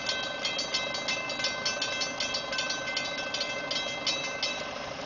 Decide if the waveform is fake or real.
real